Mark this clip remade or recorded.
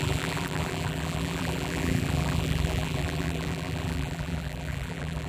remade